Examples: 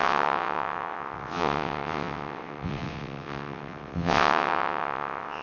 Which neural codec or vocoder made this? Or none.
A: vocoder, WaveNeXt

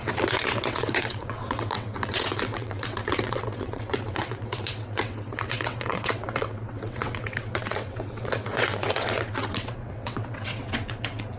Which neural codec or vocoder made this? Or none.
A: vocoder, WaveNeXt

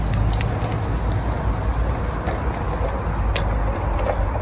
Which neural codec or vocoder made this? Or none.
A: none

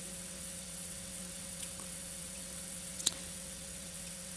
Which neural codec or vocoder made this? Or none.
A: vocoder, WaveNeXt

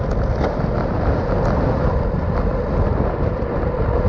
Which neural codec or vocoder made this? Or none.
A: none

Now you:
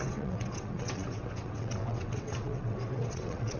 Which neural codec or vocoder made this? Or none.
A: vocoder, WaveNeXt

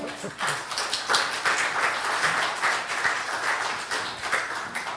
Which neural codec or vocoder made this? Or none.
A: none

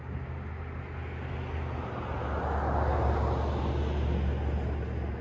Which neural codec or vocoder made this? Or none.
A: none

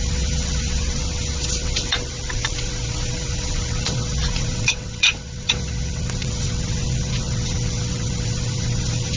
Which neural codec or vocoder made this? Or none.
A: vocoder, WaveNeXt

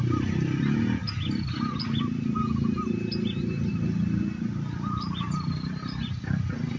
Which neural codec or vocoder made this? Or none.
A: none